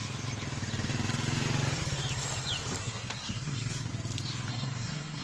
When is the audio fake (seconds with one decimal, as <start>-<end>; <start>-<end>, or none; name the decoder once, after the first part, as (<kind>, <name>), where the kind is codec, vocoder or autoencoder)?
2.8-3.9 (codec, SNAC); 4.5-5.2